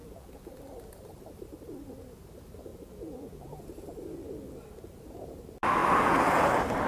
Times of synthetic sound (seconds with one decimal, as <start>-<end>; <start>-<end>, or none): 0.0-0.6; 2.7-3.6; 5.8-6.5